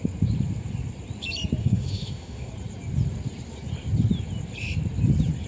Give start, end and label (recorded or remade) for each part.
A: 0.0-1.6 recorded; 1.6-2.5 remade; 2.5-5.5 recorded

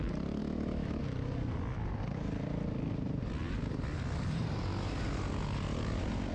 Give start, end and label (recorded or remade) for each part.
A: 0.0-0.4 recorded; 0.4-1.0 remade; 1.0-6.3 recorded

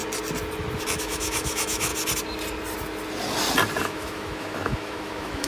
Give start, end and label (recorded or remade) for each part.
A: 0.0-1.0 recorded; 1.0-1.9 remade; 1.9-3.8 recorded; 3.8-5.5 remade

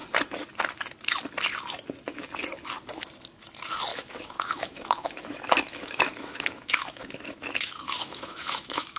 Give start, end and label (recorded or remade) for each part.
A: 0.0-3.9 recorded; 3.9-9.0 remade

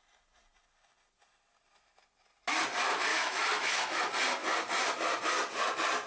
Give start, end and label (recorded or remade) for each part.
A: 0.0-3.1 recorded; 3.1-4.0 remade; 4.0-6.1 recorded

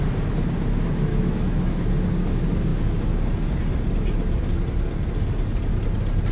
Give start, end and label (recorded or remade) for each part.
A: 0.0-1.1 recorded; 1.1-1.8 remade; 1.8-6.3 recorded